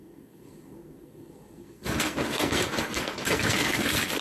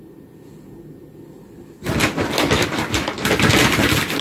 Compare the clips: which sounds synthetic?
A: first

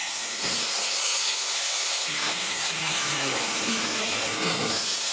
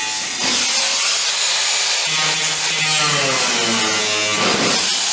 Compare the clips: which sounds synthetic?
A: first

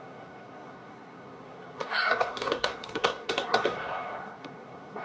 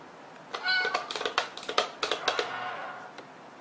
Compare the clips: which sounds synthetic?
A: first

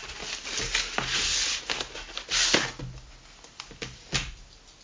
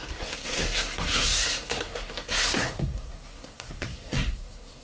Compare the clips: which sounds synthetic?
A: second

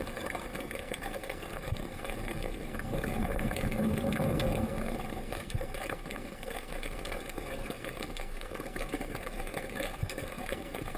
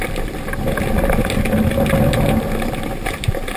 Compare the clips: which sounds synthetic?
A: first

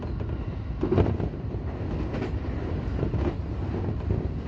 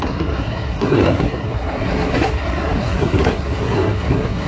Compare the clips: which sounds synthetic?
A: second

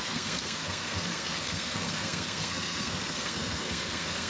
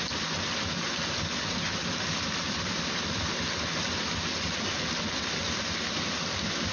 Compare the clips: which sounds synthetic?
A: first